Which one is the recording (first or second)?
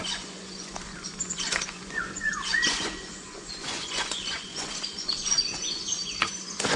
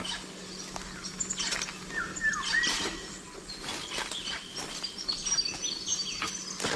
second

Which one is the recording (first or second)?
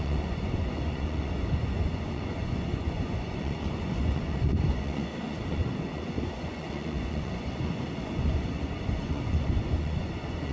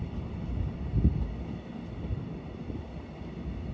second